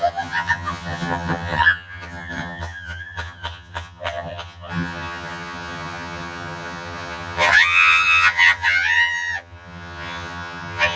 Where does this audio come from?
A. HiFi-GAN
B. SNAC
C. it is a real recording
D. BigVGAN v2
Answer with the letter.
A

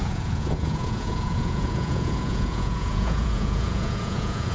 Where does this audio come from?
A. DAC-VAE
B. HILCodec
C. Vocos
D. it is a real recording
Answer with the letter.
C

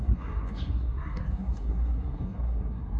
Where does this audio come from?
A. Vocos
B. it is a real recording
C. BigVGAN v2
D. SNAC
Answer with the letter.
D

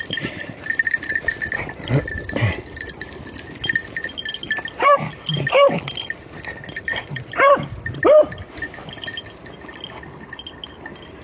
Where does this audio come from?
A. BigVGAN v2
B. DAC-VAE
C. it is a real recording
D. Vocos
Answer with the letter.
C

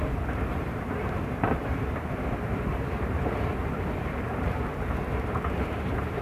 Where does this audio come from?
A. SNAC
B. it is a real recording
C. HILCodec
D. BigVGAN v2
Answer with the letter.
D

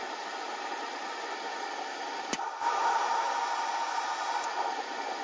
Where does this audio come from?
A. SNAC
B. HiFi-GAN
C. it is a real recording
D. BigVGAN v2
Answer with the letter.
C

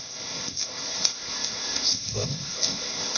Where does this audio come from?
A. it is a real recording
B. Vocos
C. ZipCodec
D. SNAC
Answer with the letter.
C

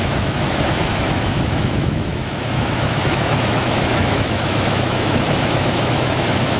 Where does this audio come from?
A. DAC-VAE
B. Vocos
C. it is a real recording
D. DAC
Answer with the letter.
A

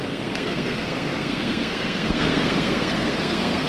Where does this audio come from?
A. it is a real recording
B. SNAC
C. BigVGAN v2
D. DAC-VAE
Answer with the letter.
B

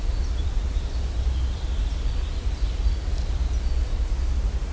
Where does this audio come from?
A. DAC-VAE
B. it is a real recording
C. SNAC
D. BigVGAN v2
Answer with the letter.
B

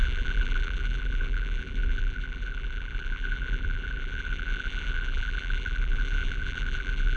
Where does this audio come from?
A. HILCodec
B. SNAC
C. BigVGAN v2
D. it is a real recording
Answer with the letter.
C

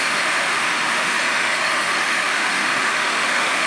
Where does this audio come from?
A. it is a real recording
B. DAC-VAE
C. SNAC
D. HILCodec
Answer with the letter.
B